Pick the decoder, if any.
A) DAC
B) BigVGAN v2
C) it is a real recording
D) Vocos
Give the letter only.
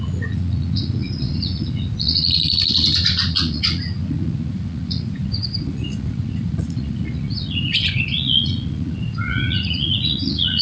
D